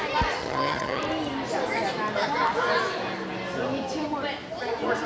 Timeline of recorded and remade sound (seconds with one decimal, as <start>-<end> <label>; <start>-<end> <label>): 0.0-0.4 recorded; 0.4-1.0 remade; 1.0-5.1 recorded